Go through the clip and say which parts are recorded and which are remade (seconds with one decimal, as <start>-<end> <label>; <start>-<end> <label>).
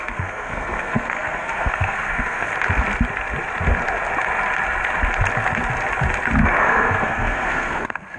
0.0-2.5 remade; 2.5-6.6 recorded; 6.6-8.2 remade